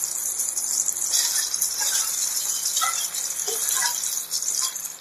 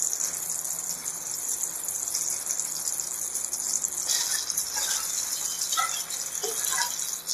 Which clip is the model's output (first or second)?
first